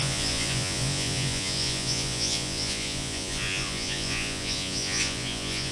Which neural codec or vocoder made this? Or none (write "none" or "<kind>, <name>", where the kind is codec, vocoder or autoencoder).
vocoder, Vocos